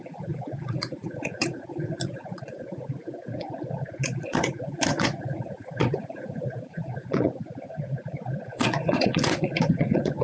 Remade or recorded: remade